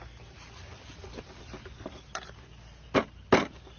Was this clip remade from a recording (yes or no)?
no